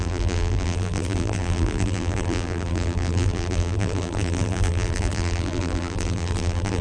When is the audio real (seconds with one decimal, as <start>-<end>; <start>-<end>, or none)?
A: none